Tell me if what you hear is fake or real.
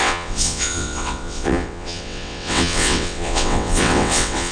fake